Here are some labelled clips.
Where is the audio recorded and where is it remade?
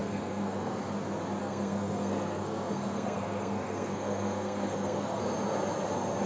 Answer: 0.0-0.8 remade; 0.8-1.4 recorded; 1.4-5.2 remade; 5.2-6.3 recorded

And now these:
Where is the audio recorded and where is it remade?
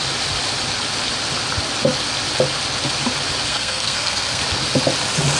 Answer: 0.0-3.5 recorded; 3.5-4.4 remade; 4.4-5.4 recorded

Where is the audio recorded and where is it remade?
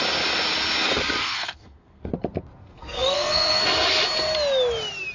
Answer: 0.0-1.2 recorded; 1.2-2.1 remade; 2.1-2.6 recorded; 2.6-3.6 remade; 3.6-5.1 recorded